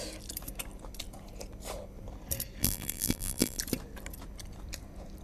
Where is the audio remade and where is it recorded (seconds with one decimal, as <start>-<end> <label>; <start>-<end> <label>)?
0.0-2.6 recorded; 2.6-3.6 remade; 3.6-5.2 recorded